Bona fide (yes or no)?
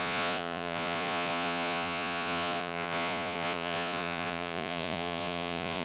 no